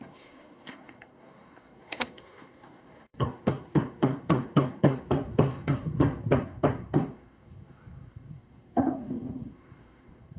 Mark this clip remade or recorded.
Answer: remade